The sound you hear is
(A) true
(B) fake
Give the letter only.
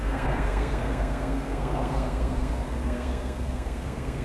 B